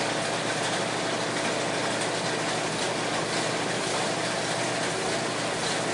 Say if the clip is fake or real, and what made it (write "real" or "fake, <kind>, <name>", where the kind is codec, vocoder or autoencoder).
real